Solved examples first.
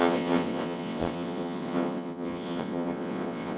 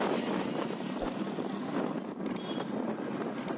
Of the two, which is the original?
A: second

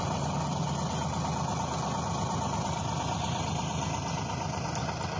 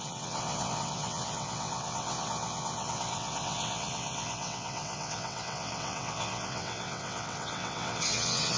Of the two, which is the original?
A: first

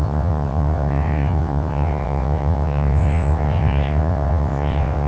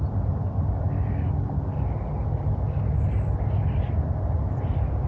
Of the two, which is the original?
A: second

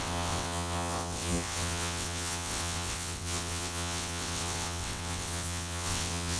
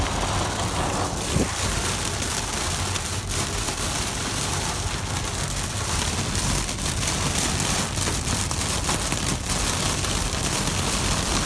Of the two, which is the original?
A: second